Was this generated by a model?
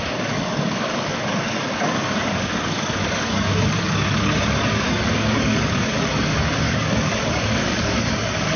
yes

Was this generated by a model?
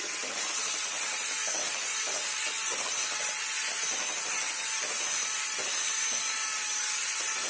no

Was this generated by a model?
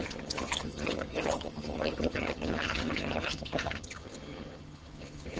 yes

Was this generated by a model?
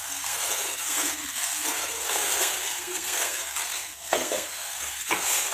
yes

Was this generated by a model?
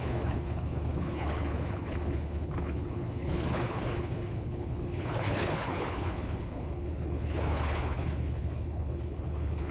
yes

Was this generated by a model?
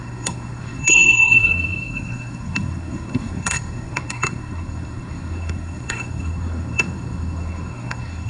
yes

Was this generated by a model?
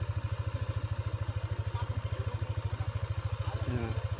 no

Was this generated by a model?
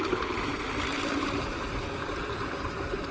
no